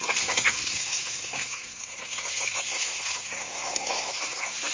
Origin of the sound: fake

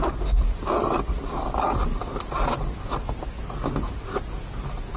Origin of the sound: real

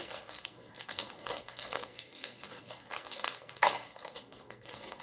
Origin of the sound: fake